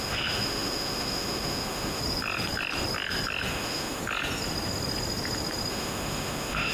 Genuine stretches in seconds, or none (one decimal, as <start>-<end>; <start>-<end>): 2.0-3.5; 4.0-5.7